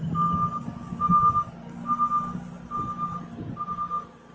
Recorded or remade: recorded